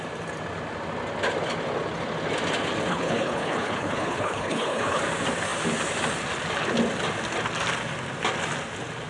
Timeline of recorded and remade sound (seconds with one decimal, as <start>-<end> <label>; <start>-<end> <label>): 0.0-2.9 recorded; 2.9-5.0 remade; 5.0-9.1 recorded